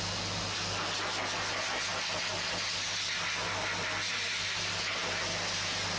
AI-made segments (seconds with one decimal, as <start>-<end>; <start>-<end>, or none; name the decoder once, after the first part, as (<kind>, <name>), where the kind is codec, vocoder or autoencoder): none